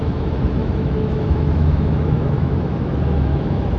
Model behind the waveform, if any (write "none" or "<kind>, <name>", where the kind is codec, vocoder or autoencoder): autoencoder, DAC-VAE